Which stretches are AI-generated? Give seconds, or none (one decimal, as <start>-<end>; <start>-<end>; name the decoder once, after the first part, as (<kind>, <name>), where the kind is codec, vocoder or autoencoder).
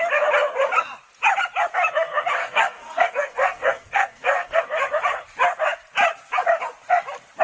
2.4-4.6 (codec, SNAC)